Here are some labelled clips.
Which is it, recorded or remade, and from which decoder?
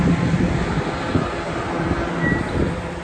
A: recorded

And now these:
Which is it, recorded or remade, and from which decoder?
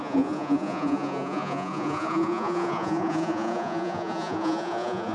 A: remade, vocoder, Vocos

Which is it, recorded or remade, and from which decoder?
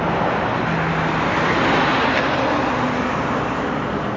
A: recorded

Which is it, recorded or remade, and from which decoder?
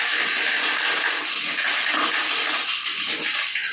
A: recorded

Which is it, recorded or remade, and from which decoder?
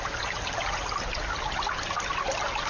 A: recorded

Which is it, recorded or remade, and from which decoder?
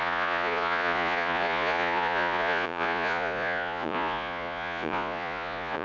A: remade, vocoder, Vocos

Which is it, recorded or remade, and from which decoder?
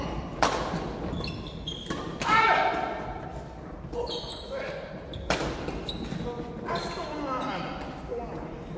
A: recorded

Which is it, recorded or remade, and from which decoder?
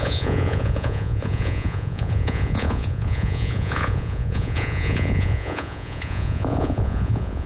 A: remade, vocoder, Vocos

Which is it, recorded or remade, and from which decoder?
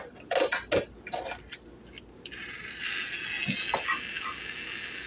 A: recorded